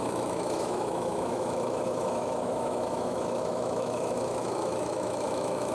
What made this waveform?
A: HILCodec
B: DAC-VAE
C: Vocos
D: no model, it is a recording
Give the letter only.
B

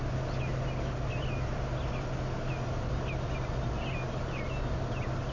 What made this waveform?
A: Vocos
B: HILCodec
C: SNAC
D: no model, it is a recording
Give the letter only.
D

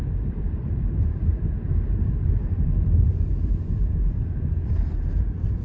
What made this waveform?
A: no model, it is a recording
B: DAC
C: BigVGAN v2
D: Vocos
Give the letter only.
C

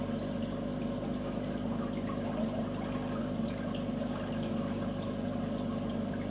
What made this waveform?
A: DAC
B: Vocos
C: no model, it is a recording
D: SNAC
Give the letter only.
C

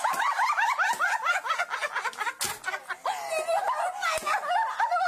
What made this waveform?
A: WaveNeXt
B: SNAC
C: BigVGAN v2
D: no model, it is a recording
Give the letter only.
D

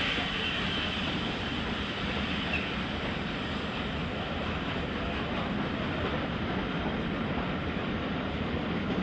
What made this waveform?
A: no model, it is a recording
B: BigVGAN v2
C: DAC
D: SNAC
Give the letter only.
B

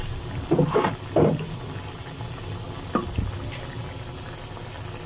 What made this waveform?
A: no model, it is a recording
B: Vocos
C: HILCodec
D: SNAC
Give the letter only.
A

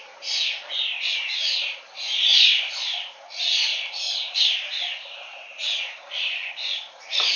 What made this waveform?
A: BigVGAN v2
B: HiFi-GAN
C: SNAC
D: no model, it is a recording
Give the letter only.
D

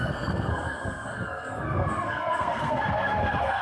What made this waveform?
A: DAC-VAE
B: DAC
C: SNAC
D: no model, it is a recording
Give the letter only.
C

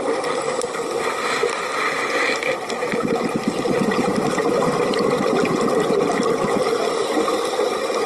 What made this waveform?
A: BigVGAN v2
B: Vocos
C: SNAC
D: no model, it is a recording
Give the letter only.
D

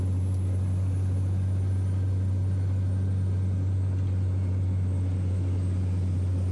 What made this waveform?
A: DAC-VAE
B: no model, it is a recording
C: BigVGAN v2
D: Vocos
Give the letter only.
B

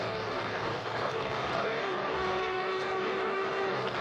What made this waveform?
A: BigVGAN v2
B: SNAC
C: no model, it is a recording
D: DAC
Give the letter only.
D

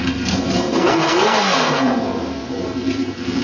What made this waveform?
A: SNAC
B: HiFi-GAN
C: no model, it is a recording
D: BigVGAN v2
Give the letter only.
A